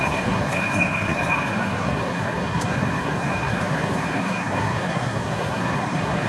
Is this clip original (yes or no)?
no